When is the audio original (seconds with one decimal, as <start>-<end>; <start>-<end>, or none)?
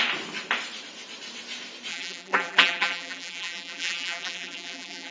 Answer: 0.0-1.9